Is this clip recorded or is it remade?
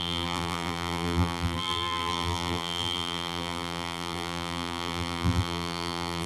remade